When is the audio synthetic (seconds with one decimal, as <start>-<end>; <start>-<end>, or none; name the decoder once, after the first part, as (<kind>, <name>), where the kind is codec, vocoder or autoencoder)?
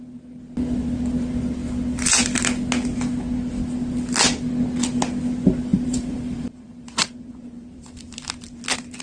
5.7-8.0 (vocoder, BigVGAN v2)